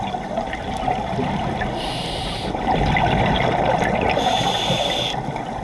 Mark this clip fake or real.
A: real